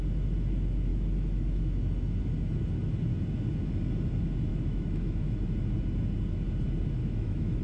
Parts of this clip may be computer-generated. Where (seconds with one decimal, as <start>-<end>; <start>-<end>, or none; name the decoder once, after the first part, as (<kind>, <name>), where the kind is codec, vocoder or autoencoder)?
0.9-1.8 (autoencoder, DAC-VAE); 4.5-5.3; 7.0-7.6

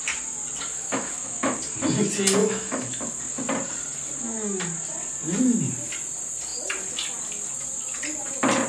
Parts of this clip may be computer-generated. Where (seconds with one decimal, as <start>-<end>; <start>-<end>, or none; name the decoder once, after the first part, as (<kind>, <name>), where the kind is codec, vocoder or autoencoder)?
0.7-1.6 (autoencoder, DAC-VAE); 2.4-3.2

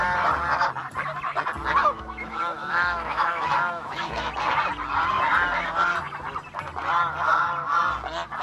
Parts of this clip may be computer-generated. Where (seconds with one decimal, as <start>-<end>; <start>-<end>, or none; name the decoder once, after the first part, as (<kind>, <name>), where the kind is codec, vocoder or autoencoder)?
1.8-4.3 (autoencoder, DAC-VAE)

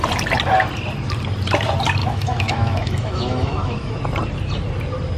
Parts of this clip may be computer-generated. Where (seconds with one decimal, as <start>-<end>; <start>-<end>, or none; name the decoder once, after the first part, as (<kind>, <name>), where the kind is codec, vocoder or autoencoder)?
2.0-4.0 (autoencoder, DAC-VAE)

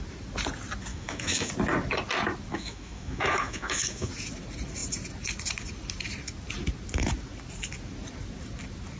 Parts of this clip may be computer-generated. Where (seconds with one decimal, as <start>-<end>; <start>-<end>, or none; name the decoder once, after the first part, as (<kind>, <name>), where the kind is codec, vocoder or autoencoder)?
0.9-1.5 (autoencoder, DAC-VAE); 2.5-4.1

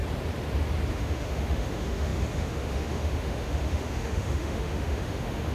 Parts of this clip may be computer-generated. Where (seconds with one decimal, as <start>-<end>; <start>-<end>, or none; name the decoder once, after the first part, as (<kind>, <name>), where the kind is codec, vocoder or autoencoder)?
0.9-5.5 (autoencoder, DAC-VAE)

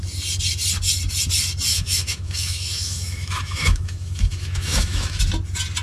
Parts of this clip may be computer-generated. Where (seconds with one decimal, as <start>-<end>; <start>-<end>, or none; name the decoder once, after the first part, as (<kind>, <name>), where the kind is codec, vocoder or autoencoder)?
1.7-5.2 (autoencoder, DAC-VAE)

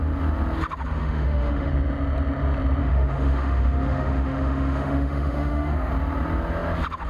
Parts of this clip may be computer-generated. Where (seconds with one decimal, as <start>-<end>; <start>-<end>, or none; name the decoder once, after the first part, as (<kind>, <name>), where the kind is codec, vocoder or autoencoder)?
1.0-1.7 (autoencoder, DAC-VAE); 2.8-5.9